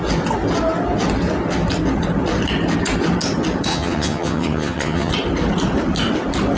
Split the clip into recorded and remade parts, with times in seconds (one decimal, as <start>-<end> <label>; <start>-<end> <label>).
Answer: 0.0-3.7 recorded; 3.7-5.1 remade; 5.1-6.6 recorded